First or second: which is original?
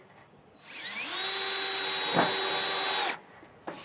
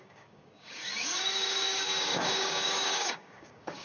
first